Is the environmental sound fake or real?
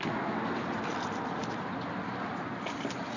real